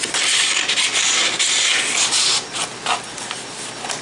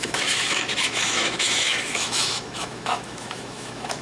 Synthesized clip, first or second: second